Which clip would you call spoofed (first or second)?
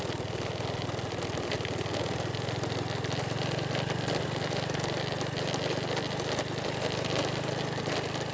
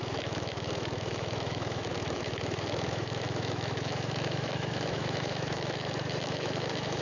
second